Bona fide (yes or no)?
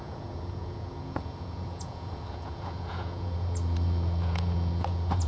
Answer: no